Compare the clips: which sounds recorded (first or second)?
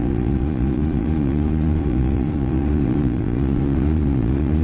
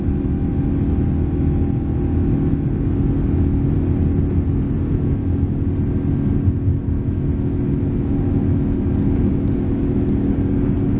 second